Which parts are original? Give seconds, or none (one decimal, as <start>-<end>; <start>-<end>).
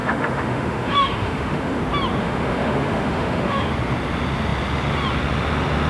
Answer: 1.8-2.2; 3.7-5.9